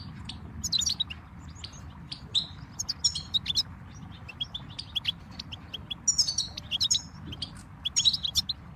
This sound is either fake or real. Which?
real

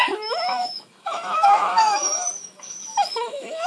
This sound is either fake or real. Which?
fake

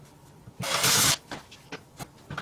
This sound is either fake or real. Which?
real